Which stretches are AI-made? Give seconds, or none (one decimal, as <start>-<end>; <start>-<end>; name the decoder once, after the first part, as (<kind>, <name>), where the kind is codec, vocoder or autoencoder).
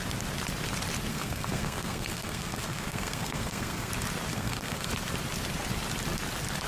1.1-3.9 (codec, SNAC); 4.3-4.9